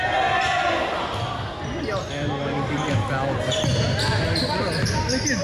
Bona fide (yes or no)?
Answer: yes